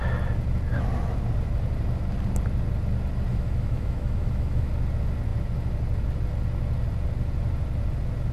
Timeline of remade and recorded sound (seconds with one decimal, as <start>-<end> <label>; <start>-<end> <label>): 0.0-3.3 recorded; 3.3-4.7 remade; 4.7-8.3 recorded